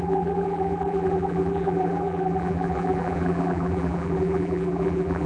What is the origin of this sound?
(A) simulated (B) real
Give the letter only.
A